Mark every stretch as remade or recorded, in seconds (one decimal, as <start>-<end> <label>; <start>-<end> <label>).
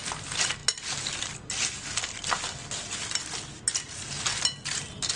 0.0-5.2 recorded